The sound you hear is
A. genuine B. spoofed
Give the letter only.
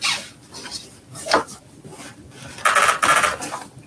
A